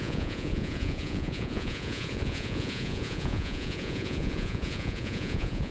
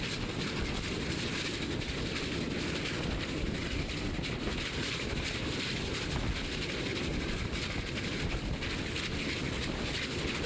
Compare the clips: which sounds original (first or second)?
second